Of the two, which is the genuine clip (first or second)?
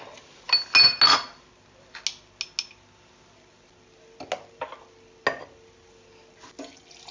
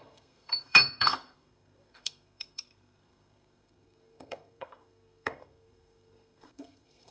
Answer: first